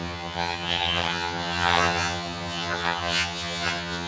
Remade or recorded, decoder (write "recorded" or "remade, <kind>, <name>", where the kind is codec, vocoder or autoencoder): remade, vocoder, HiFi-GAN